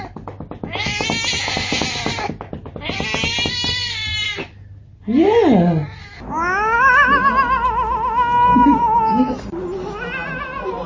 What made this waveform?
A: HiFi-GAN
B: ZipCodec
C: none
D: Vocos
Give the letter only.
C